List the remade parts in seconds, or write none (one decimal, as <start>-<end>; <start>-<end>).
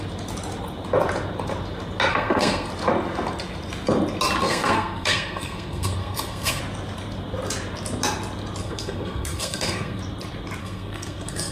2.1-2.7; 4.4-6.6; 8.6-10.0; 10.6-11.5